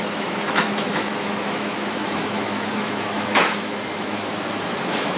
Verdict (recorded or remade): remade